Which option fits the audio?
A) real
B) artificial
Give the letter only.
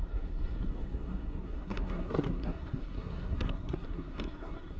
B